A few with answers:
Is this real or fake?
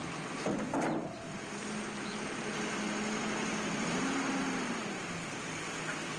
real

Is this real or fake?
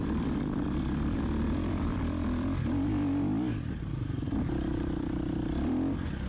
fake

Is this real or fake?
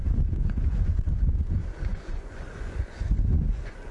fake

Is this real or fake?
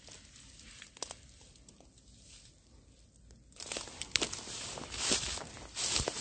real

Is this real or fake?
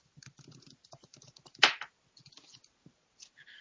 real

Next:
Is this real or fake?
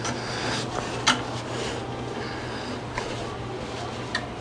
real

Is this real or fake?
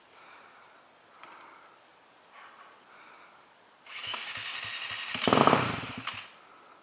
real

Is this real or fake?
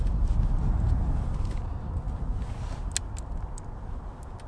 real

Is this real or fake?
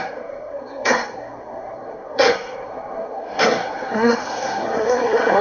fake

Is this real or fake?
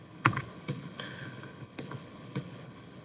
fake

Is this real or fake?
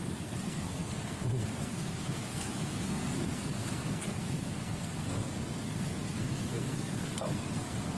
fake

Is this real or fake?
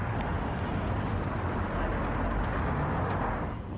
real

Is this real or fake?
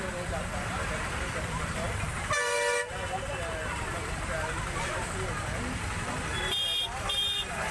fake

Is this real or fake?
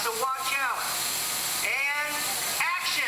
real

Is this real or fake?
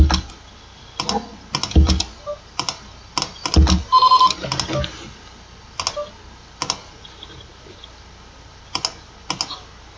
real